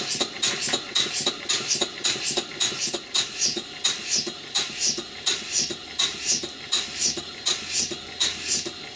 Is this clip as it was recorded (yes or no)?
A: yes